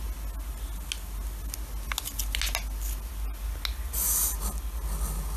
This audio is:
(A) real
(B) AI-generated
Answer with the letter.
A